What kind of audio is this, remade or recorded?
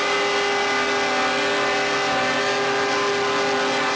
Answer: recorded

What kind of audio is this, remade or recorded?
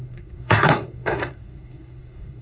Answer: remade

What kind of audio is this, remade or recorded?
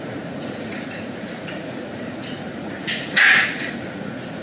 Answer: remade